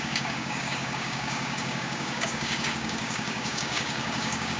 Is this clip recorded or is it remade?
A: remade